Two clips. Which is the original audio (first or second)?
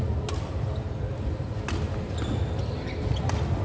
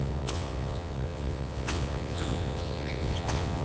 first